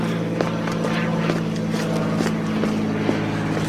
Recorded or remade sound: recorded